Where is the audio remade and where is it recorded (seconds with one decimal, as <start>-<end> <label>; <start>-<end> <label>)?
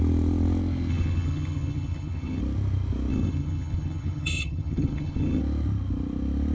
0.0-0.9 recorded; 0.9-2.4 remade; 2.4-3.1 recorded; 3.1-5.4 remade; 5.4-6.5 recorded